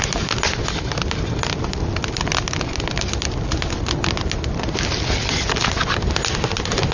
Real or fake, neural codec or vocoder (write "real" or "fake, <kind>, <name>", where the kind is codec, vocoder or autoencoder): real